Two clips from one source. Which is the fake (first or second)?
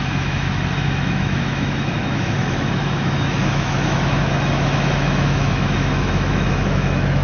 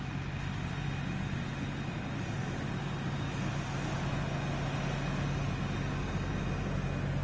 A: first